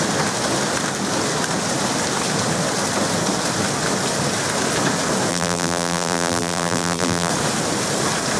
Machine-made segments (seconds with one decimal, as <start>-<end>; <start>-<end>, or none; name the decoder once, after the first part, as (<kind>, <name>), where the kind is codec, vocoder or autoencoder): 5.3-7.3 (vocoder, BigVGAN v2)